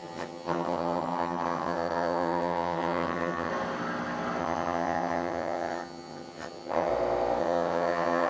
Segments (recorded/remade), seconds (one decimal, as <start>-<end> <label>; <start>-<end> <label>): 0.0-3.5 remade; 3.5-4.4 recorded; 4.4-6.9 remade; 6.9-7.4 recorded; 7.4-8.3 remade

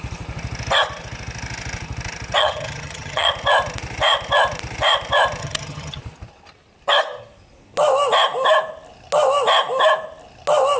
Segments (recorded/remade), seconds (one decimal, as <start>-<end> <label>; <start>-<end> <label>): 0.0-2.4 recorded; 2.4-3.3 remade; 3.3-5.4 recorded; 5.4-6.0 remade; 6.0-10.8 recorded

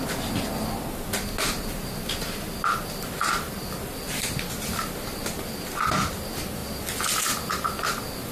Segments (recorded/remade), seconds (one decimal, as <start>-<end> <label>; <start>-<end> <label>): 0.0-8.3 recorded

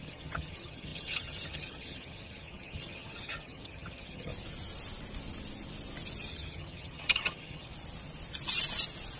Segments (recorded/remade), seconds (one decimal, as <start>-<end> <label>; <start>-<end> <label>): 0.0-4.3 remade; 4.3-6.3 recorded; 6.3-7.7 remade; 7.7-9.2 recorded

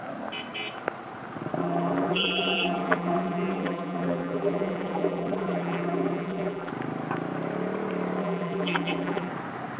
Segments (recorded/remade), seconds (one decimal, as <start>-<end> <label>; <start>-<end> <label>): 0.0-1.6 recorded; 1.6-6.7 remade; 6.7-8.2 recorded; 8.2-9.3 remade; 9.3-9.8 recorded

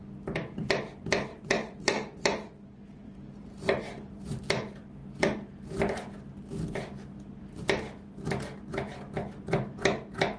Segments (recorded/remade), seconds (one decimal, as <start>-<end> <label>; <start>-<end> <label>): 0.0-1.3 recorded; 1.3-4.4 remade; 4.4-10.4 recorded